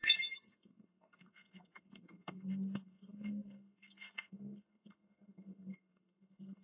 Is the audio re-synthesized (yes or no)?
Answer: yes